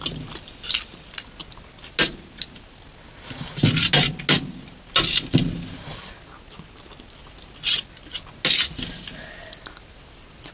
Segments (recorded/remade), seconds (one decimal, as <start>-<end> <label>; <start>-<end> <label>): 0.0-10.5 recorded